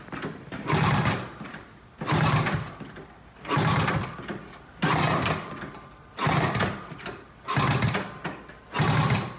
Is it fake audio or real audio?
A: real